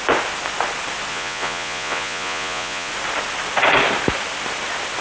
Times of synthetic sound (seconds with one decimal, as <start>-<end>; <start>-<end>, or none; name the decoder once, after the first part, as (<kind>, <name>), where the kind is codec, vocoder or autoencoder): 1.1-2.9 (vocoder, Vocos)